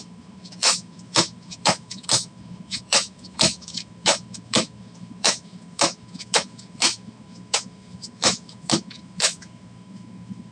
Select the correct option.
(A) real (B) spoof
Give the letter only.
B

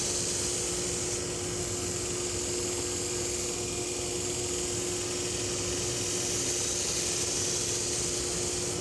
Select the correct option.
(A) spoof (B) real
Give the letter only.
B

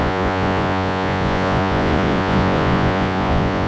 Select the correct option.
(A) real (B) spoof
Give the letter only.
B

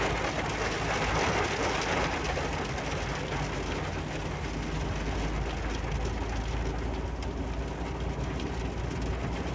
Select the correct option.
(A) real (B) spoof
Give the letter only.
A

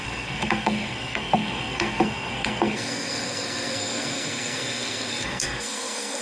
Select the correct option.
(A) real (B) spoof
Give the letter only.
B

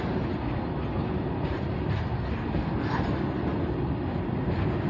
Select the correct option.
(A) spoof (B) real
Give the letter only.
B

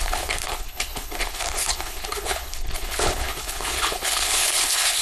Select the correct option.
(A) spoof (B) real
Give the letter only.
A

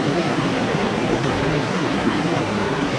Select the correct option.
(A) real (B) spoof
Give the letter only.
B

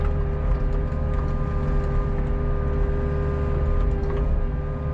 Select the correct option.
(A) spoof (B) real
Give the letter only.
B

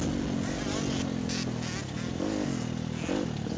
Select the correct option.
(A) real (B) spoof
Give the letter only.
A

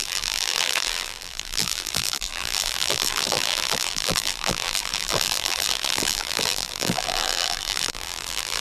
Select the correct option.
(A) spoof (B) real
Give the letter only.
A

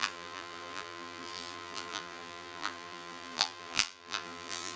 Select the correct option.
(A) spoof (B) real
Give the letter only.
A